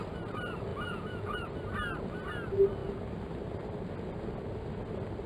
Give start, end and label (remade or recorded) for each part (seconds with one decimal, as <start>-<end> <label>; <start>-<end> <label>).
0.0-0.7 recorded; 0.7-1.5 remade; 1.5-5.3 recorded